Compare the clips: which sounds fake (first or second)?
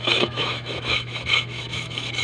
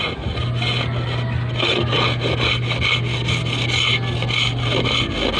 first